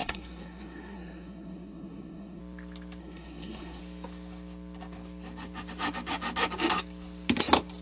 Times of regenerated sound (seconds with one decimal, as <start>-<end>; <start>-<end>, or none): 0.0-2.4; 3.0-3.8